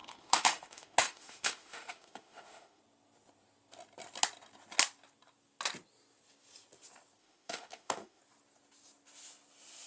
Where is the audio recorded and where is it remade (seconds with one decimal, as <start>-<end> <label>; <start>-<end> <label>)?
0.0-2.8 remade; 2.8-7.2 recorded; 7.2-8.2 remade; 8.2-9.9 recorded